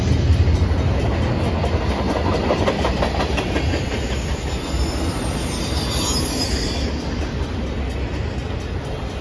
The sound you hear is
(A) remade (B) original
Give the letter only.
B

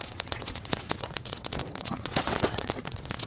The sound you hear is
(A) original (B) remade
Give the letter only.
B